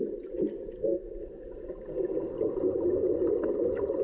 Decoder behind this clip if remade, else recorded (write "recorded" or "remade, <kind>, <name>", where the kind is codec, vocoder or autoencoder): recorded